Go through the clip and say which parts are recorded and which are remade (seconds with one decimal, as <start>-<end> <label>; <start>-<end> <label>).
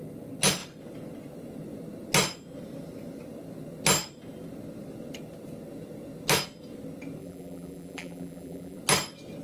0.0-7.2 recorded; 7.2-8.8 remade; 8.8-9.4 recorded